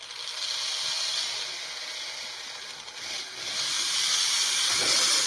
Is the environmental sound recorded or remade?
recorded